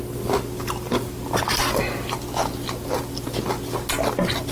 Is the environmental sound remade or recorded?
recorded